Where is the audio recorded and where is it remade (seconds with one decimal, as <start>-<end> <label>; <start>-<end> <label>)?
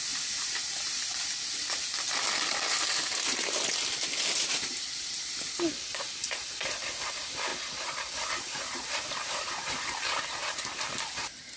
0.0-1.1 remade; 1.1-4.5 recorded; 4.5-7.5 remade; 7.5-8.1 recorded; 8.1-10.4 remade; 10.4-10.9 recorded; 10.9-11.6 remade